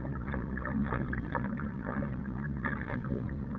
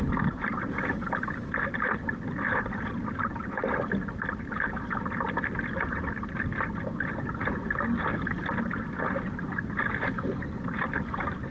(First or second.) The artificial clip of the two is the first